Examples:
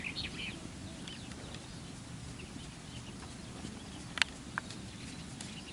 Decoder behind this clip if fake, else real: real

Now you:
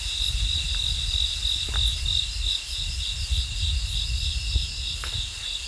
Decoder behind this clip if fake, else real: real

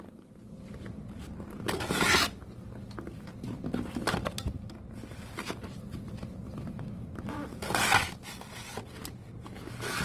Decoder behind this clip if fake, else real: real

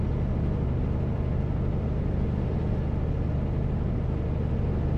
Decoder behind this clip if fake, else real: real